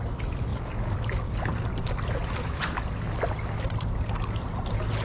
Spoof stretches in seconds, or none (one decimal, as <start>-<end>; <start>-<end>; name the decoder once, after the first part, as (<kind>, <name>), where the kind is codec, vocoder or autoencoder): none